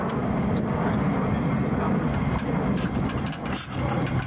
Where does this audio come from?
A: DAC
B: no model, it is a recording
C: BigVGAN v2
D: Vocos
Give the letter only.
B